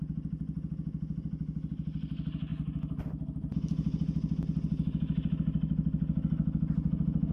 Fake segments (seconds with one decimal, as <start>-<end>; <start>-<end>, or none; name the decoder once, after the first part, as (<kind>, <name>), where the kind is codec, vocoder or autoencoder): none